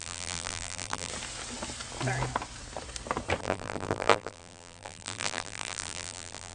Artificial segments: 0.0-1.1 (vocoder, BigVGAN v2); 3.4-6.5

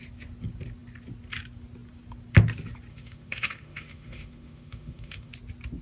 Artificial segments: 2.9-5.3 (autoencoder, DAC-VAE)

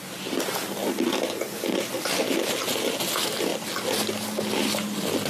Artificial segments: none

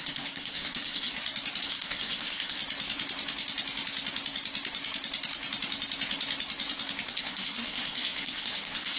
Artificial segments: 0.0-1.1 (codec, SNAC); 1.6-2.6; 7.1-9.0

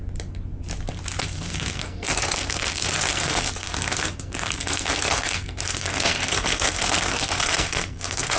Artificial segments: 1.2-8.4 (codec, SNAC)